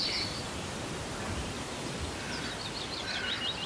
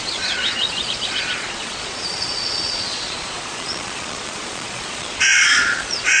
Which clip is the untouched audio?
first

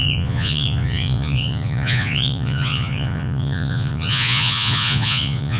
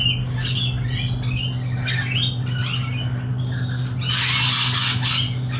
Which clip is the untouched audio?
second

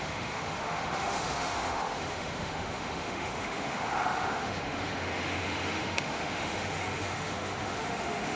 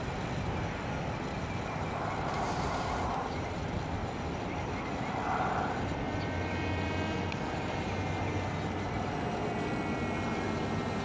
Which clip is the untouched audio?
second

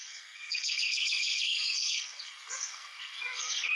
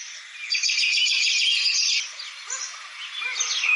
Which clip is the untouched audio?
second